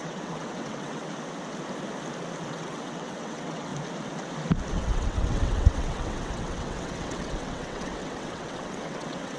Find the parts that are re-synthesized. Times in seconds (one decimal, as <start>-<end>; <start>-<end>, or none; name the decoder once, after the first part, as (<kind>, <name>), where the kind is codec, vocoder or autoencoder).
0.0-1.0 (vocoder, WaveNeXt); 2.4-3.7; 4.7-9.4